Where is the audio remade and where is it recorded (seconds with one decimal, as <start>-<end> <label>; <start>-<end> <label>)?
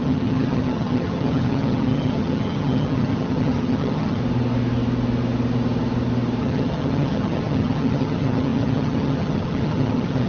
0.0-4.2 remade; 4.2-6.4 recorded; 6.4-10.3 remade